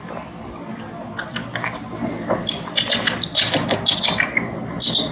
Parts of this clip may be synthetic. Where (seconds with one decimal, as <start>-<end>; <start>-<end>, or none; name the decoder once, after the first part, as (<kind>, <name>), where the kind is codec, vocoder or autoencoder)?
none

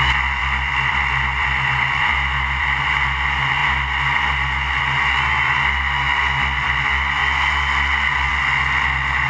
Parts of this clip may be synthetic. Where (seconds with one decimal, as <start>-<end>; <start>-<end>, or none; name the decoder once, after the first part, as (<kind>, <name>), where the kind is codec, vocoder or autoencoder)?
0.4-2.8 (vocoder, BigVGAN v2)

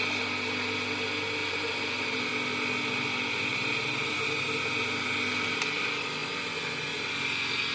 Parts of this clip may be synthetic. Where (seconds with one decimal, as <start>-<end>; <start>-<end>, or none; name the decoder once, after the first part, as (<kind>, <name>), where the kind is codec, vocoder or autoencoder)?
1.4-2.3 (vocoder, BigVGAN v2); 3.5-4.2

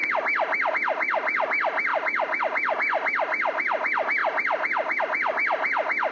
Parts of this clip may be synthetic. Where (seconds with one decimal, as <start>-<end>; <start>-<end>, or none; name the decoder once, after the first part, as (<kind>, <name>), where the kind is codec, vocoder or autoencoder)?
4.2-5.0 (vocoder, BigVGAN v2)